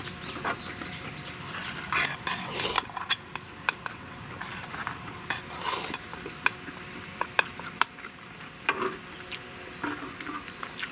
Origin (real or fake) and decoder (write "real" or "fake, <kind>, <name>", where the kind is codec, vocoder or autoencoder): real